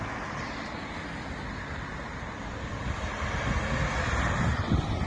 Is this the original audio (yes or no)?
yes